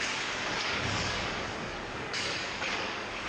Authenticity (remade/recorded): remade